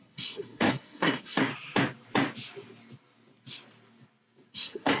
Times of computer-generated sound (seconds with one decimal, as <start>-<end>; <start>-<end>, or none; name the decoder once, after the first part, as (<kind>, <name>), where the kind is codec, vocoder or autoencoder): 0.0-1.5 (codec, SNAC); 4.5-5.0